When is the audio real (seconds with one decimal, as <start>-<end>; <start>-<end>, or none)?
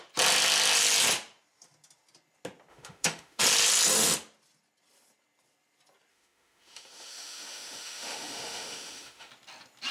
0.0-2.7; 3.4-6.1; 9.3-9.9